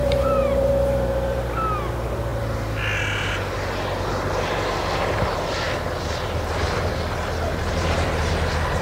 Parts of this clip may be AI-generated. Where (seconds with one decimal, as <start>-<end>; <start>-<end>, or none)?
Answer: 0.0-0.7; 7.5-8.3